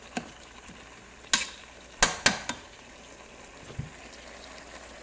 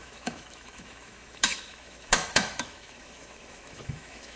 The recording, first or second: first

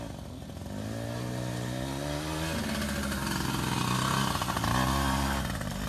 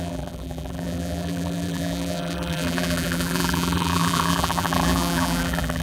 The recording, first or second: first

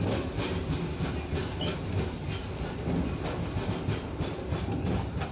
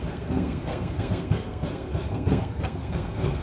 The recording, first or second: first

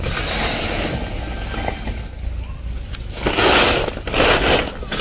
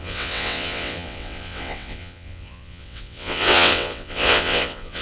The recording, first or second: first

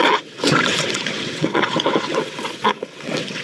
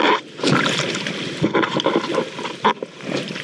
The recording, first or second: second